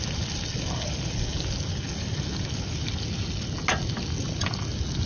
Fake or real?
real